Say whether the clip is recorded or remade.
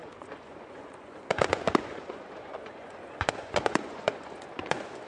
remade